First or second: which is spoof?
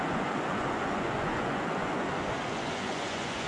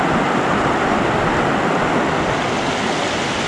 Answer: first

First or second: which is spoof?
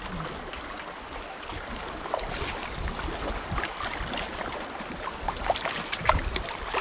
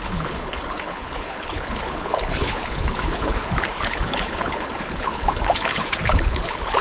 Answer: second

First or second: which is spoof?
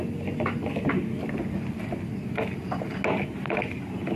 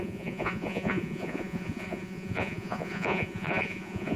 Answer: second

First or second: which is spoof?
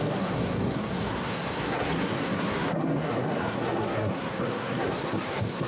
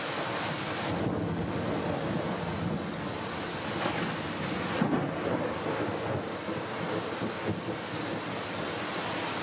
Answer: first